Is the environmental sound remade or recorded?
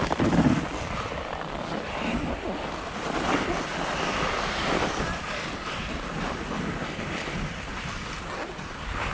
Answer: recorded